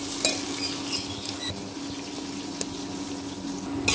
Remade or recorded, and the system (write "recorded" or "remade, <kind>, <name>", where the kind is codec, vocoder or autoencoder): recorded